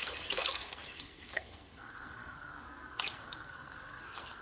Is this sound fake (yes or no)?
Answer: yes